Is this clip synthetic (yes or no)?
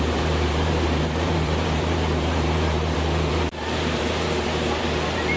yes